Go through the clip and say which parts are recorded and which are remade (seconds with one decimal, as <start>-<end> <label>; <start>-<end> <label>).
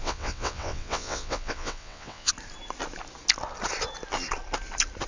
0.0-2.3 remade; 2.3-5.1 recorded